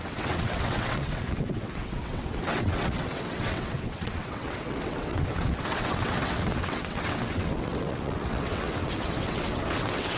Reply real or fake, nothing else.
fake